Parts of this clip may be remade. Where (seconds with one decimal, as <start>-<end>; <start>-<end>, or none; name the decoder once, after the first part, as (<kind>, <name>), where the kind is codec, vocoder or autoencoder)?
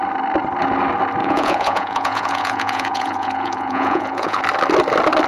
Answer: 1.2-4.4 (vocoder, Vocos)